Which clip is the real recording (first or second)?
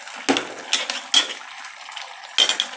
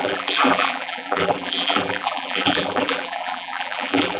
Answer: first